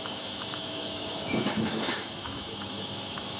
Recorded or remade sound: remade